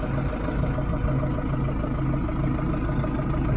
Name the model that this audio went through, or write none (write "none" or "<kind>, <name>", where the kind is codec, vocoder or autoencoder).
none